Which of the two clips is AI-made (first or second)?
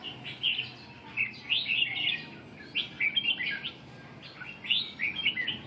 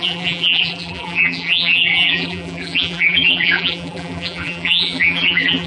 second